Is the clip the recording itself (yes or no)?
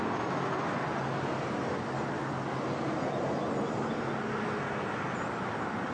yes